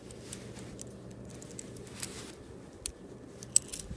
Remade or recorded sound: recorded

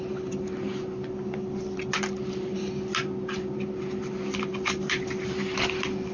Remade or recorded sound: recorded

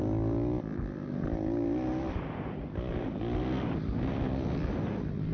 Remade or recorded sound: recorded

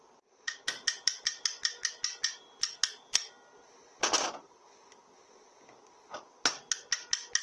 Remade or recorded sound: recorded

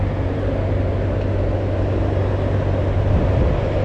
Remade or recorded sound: recorded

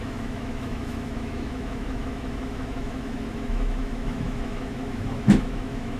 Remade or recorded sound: remade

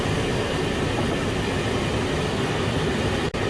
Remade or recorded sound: recorded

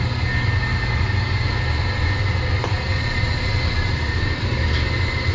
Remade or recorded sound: recorded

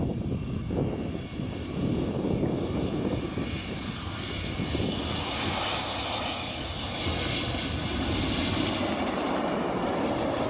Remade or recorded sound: recorded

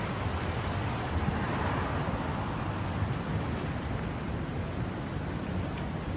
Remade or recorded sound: recorded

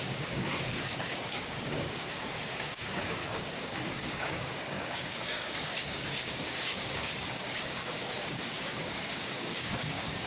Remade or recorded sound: remade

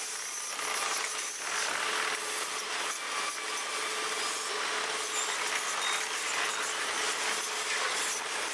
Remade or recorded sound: recorded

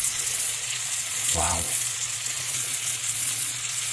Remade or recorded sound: remade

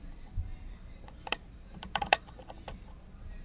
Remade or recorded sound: remade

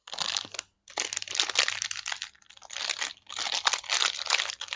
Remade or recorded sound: remade